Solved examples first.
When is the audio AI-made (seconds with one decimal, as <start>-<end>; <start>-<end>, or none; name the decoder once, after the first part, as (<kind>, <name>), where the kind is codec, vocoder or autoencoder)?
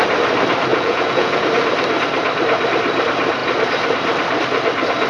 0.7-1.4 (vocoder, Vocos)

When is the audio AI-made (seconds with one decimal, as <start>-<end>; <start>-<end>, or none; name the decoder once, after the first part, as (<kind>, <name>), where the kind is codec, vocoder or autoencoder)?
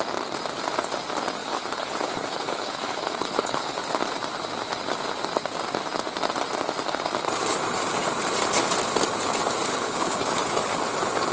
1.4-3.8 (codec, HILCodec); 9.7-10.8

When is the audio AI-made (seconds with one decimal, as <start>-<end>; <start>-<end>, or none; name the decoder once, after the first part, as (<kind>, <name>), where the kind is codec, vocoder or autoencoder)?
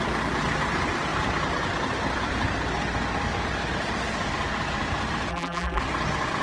5.3-5.8 (vocoder, BigVGAN v2)